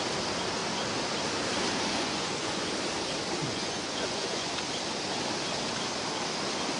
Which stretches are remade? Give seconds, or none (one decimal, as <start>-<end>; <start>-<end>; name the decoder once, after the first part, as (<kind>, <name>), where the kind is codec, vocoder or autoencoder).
1.9-2.7 (vocoder, Vocos); 3.4-4.5